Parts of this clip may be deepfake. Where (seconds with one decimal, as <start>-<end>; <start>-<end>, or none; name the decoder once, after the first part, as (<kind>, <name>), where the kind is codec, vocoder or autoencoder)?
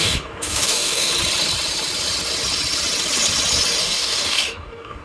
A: 0.0-1.1 (codec, DAC); 3.8-5.0